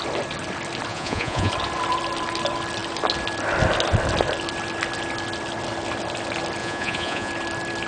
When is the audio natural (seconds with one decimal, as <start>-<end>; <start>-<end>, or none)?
0.0-0.9; 1.5-6.6; 7.3-7.9